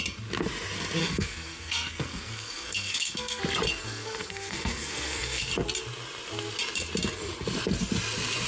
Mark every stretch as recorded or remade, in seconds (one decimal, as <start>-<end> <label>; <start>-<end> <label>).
0.0-1.0 recorded; 1.0-3.4 remade; 3.4-3.8 recorded; 3.8-5.5 remade; 5.5-8.5 recorded